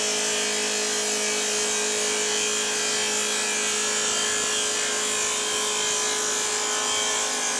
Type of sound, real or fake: real